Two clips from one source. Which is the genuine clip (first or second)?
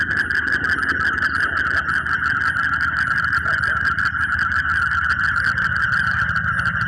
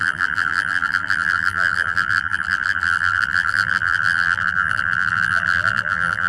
first